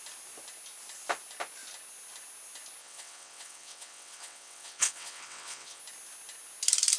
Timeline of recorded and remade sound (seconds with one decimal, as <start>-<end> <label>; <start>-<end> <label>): 0.0-2.8 recorded; 2.8-5.8 remade; 5.8-7.0 recorded